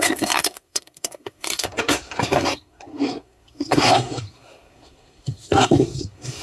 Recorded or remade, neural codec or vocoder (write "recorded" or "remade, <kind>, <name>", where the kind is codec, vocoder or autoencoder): remade, codec, SNAC